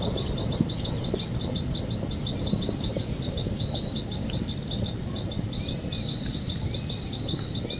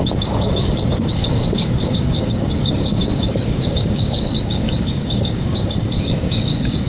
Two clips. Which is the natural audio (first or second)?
first